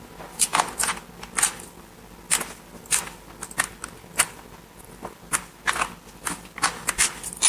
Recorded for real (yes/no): yes